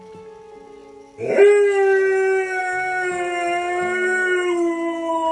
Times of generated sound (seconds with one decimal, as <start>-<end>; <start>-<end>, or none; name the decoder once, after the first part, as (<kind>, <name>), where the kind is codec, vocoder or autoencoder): none